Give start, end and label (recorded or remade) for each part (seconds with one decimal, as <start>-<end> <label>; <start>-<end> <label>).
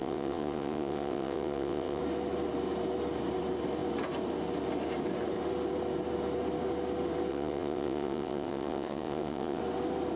0.0-2.0 remade; 2.0-7.3 recorded; 7.3-9.6 remade; 9.6-10.2 recorded